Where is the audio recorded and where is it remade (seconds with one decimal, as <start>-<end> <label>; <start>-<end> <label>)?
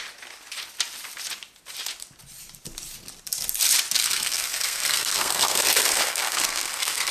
0.0-4.0 recorded; 4.0-7.1 remade